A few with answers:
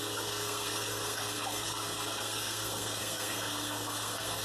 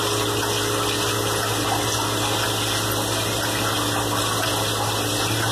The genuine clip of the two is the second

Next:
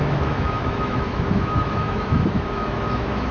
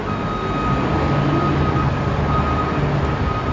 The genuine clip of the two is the second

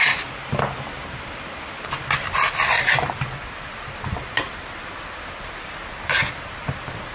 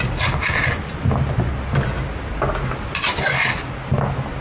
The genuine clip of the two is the second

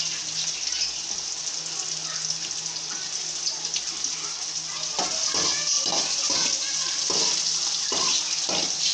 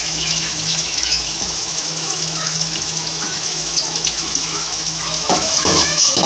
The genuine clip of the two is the first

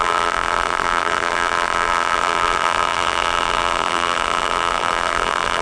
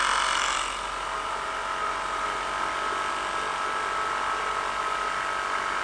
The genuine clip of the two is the second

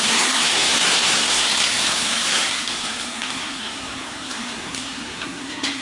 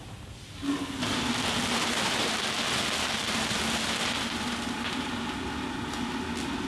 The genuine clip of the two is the second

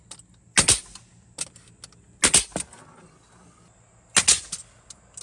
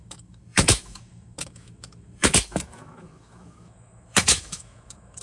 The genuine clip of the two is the first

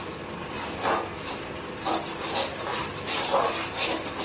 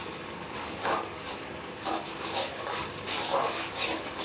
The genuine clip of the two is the first